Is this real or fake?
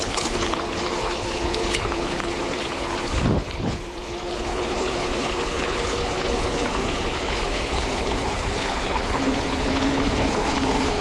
fake